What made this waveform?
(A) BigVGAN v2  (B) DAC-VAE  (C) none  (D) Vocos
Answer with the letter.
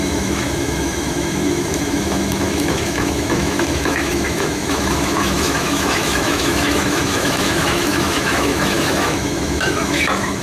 B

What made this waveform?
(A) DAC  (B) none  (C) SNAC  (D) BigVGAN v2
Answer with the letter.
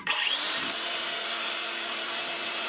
D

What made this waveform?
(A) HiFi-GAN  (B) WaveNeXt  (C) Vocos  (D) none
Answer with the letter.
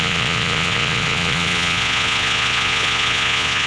C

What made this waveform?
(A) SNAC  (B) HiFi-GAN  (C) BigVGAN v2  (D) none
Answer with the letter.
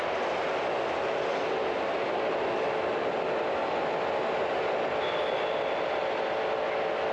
D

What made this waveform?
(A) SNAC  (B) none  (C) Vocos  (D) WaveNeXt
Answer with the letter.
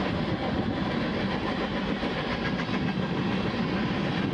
B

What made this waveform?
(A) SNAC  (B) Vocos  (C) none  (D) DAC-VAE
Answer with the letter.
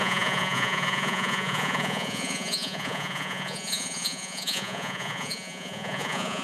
B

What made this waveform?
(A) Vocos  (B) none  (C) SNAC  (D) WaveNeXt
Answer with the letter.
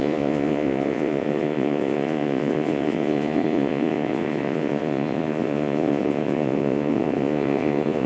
A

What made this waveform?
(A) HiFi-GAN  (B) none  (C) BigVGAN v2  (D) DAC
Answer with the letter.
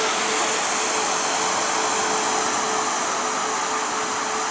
B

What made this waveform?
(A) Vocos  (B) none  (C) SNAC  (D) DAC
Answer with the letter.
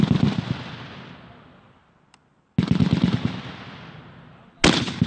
B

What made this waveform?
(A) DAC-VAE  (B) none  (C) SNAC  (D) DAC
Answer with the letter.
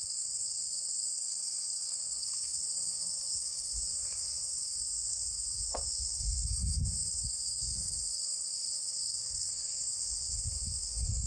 C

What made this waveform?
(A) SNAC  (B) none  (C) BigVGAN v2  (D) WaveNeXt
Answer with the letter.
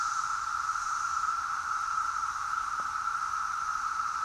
C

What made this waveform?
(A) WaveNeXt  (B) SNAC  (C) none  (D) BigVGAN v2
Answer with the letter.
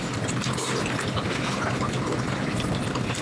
C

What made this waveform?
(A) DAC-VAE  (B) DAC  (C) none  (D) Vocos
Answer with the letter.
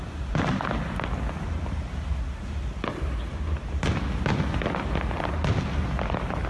C